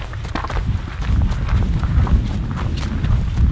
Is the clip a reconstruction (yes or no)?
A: yes